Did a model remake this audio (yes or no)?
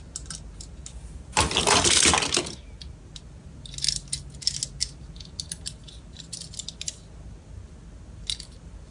no